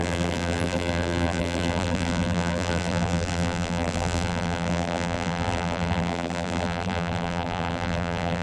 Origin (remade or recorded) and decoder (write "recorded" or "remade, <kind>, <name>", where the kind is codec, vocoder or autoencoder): remade, vocoder, BigVGAN v2